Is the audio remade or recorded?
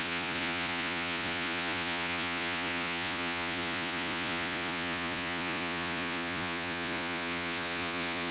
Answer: remade